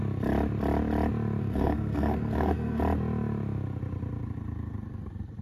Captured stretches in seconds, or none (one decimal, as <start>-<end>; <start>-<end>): 0.0-1.4; 2.8-5.4

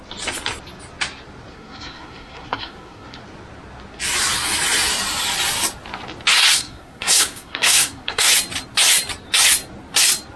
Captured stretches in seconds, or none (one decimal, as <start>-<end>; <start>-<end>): 0.0-1.5; 3.2-6.5; 8.3-10.4

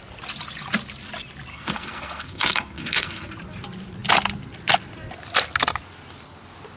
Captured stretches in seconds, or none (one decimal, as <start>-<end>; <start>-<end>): 0.0-1.5; 3.3-6.8

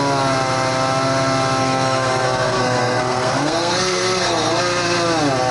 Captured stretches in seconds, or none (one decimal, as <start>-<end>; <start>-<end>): 0.0-1.6; 4.6-5.5

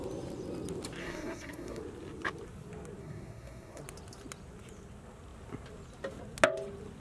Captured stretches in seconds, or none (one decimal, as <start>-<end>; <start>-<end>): 0.0-1.0; 1.8-3.0; 3.8-7.0

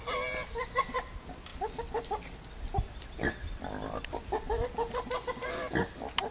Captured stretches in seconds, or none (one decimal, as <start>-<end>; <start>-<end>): 0.0-6.3

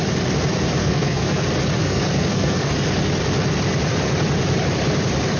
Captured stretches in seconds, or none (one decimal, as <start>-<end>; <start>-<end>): 0.0-0.8; 1.4-1.8; 2.7-5.4